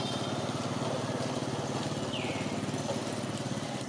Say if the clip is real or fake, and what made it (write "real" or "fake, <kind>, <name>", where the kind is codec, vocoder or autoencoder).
real